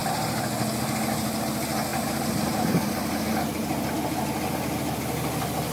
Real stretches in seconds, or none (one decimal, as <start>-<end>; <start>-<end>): 0.0-1.9; 3.9-5.7